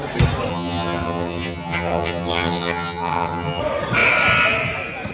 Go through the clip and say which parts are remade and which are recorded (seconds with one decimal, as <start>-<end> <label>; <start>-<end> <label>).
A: 0.0-0.5 recorded; 0.5-3.6 remade; 3.6-5.1 recorded

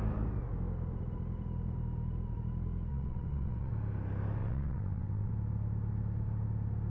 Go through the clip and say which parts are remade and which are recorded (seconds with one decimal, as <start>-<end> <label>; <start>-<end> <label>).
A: 0.0-2.9 recorded; 2.9-3.7 remade; 3.7-4.4 recorded; 4.4-5.3 remade; 5.3-6.9 recorded

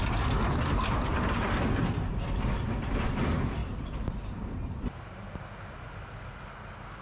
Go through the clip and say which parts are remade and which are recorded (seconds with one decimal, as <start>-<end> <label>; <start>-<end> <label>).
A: 0.0-3.6 recorded; 3.6-5.4 remade; 5.4-7.0 recorded

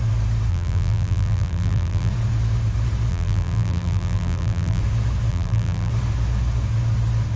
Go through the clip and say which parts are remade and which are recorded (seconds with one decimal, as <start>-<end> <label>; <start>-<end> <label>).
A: 0.0-0.5 recorded; 0.5-2.1 remade; 2.1-3.1 recorded; 3.1-4.8 remade; 4.8-5.3 recorded; 5.3-5.9 remade; 5.9-7.4 recorded

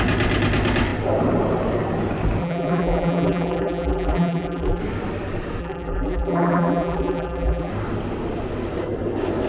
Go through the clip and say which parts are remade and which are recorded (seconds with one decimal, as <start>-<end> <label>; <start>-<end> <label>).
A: 0.0-2.4 recorded; 2.4-4.8 remade; 4.8-5.6 recorded; 5.6-7.7 remade; 7.7-9.5 recorded

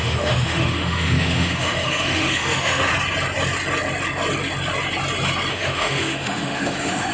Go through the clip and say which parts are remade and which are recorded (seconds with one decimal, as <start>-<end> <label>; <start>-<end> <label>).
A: 0.0-2.9 remade; 2.9-5.5 recorded; 5.5-7.1 remade

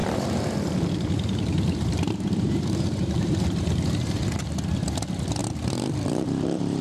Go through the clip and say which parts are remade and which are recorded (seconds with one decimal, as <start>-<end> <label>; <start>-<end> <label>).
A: 0.0-4.1 remade; 4.1-5.4 recorded; 5.4-6.8 remade